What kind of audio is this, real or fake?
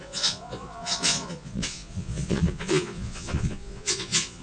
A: fake